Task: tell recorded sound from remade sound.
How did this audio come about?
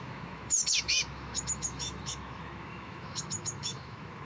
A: remade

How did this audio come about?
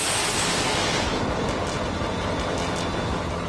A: recorded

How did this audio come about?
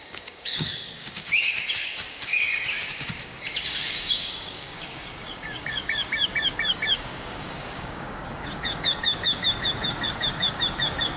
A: remade